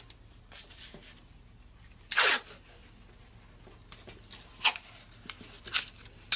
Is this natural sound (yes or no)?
yes